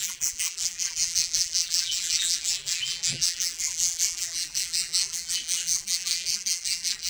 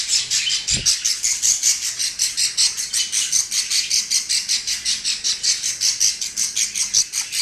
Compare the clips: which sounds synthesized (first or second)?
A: first